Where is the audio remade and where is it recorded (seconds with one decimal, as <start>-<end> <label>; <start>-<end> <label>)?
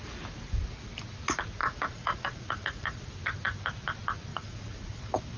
0.0-1.6 recorded; 1.6-3.1 remade; 3.1-4.3 recorded; 4.3-5.0 remade; 5.0-5.4 recorded